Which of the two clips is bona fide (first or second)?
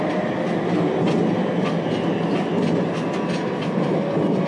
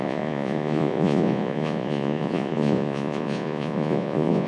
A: first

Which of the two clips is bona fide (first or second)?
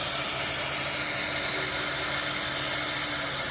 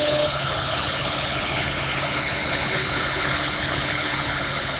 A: first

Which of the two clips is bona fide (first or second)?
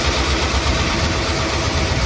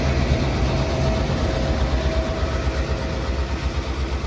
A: second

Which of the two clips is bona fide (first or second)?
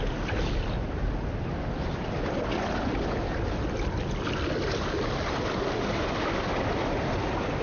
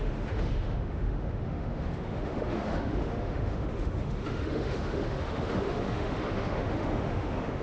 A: first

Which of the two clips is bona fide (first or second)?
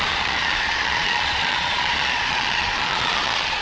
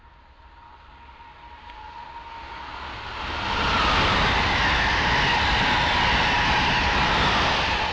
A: second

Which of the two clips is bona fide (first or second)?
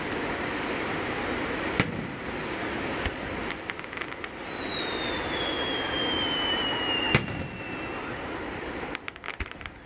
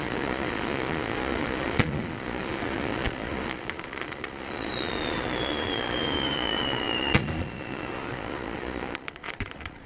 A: first